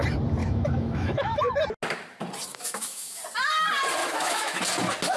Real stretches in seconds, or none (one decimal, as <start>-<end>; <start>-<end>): 0.0-0.4; 1.4-2.5; 3.2-4.0; 4.6-5.2